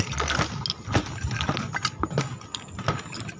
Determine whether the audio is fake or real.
real